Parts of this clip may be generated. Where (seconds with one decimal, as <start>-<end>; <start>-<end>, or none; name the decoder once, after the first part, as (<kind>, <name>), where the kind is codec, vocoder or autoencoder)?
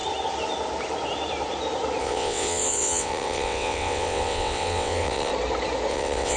2.0-5.3 (vocoder, WaveNeXt); 5.9-6.4